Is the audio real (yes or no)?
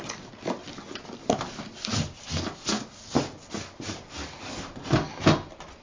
yes